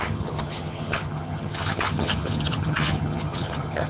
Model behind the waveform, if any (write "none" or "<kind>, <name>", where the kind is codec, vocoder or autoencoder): vocoder, HiFi-GAN